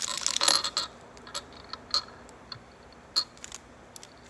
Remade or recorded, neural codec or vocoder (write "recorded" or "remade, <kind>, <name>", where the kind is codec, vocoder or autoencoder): recorded